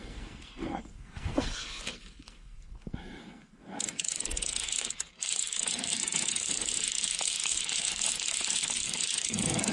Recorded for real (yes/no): no